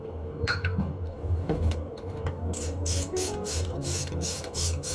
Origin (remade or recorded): remade